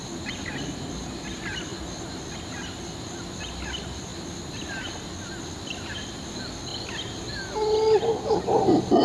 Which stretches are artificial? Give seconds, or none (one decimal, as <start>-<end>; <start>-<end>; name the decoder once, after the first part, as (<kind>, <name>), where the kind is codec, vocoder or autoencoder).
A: none

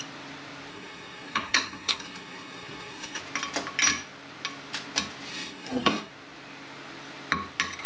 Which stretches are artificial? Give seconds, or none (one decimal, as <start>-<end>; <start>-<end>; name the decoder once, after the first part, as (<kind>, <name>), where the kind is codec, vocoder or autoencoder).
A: 0.7-3.2 (codec, SNAC); 5.3-6.1

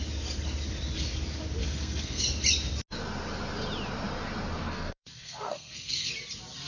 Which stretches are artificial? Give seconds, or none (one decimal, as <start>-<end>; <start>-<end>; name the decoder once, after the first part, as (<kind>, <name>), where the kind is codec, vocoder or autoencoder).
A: 1.6-2.2 (codec, SNAC); 4.6-6.1

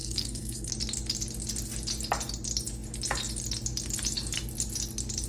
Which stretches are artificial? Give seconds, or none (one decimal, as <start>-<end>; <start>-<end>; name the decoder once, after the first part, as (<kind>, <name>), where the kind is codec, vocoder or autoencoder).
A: 0.0-0.7 (codec, SNAC)

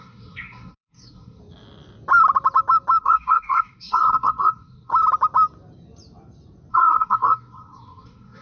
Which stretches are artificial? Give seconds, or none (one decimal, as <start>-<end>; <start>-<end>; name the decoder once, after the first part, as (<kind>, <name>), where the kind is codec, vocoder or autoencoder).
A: 0.0-1.4 (codec, SNAC); 3.0-4.9; 6.7-8.4

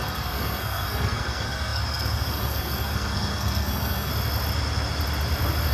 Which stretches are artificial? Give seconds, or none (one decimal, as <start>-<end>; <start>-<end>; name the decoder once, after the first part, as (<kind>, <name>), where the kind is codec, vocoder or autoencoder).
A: 0.0-4.1 (codec, SNAC)

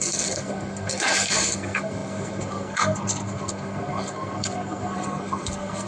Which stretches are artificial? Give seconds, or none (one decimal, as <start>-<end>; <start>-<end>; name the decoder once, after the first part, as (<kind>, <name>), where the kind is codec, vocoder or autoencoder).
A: 0.0-5.9 (codec, SNAC)